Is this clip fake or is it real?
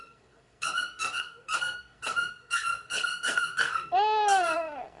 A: fake